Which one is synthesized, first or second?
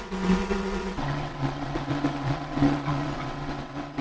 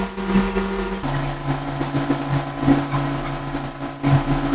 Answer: first